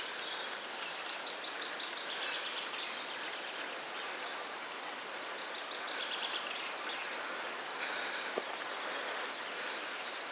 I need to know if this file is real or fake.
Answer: real